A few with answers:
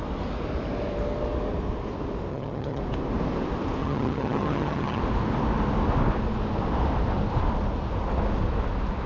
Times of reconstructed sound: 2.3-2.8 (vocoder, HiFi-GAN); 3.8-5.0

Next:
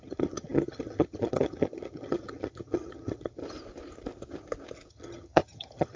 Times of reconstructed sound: 0.0-3.4 (vocoder, HiFi-GAN); 4.9-6.0

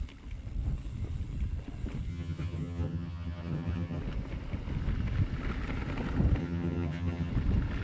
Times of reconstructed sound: 2.1-4.0 (vocoder, HiFi-GAN); 6.4-7.3

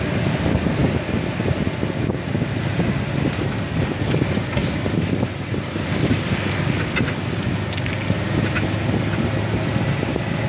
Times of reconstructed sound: none

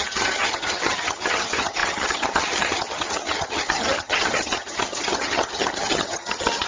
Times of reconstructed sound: 0.0-6.7 (vocoder, HiFi-GAN)

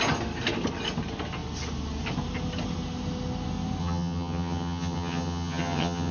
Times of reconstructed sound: 3.8-6.1 (vocoder, HiFi-GAN)

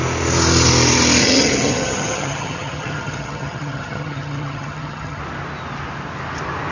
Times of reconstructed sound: 1.2-5.2 (vocoder, HiFi-GAN)